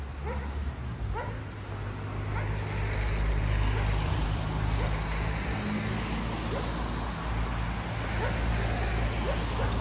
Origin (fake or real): real